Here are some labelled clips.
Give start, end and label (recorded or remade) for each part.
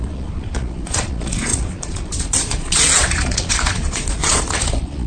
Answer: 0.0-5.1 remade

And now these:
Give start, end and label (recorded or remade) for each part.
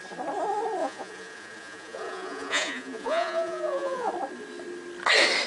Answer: 0.0-0.8 recorded; 0.8-4.1 remade; 4.1-5.5 recorded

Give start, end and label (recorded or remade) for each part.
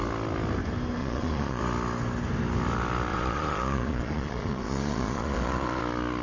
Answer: 0.0-1.0 recorded; 1.0-1.6 remade; 1.6-3.1 recorded; 3.1-5.8 remade; 5.8-6.2 recorded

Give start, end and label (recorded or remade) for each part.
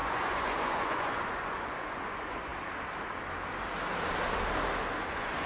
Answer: 0.0-2.5 remade; 2.5-5.1 recorded; 5.1-5.5 remade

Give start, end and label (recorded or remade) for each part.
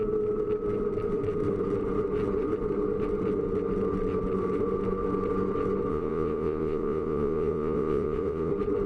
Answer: 0.0-5.9 recorded; 5.9-8.5 remade; 8.5-8.9 recorded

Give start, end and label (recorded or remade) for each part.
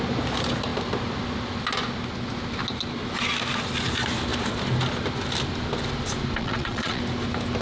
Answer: 0.0-6.4 recorded; 6.4-7.0 remade; 7.0-7.6 recorded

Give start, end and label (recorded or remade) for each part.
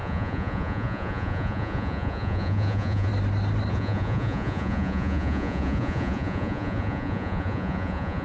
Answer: 0.0-3.1 remade; 3.1-3.7 recorded; 3.7-8.2 remade